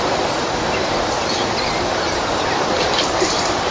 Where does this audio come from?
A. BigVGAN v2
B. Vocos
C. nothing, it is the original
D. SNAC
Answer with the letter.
A